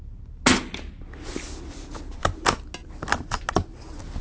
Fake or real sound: real